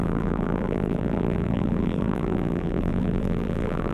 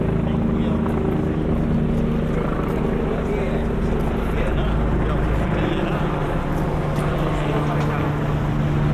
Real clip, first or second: second